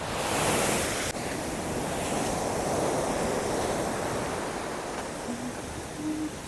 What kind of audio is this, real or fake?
real